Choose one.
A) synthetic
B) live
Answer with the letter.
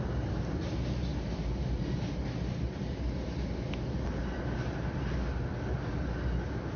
B